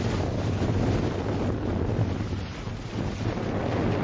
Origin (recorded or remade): recorded